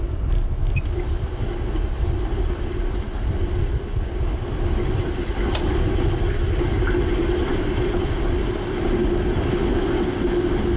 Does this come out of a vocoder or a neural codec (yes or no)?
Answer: no